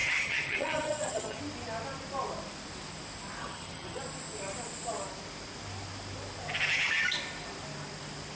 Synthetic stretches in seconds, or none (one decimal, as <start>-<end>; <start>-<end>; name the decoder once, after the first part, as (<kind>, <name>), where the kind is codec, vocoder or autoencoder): 0.0-1.4 (vocoder, HiFi-GAN); 3.4-4.0